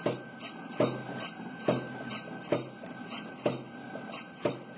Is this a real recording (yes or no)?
yes